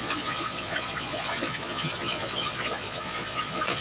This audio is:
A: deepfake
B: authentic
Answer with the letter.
A